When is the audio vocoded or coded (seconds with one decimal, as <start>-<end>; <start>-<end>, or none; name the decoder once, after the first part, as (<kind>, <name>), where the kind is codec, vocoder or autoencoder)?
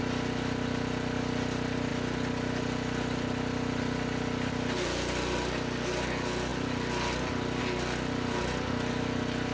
none